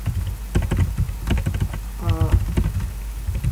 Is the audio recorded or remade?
recorded